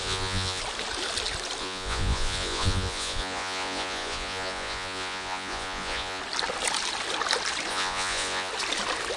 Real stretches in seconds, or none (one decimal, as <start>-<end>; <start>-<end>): 0.6-1.6; 6.2-7.7; 8.5-9.2